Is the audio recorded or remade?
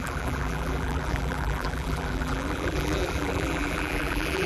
remade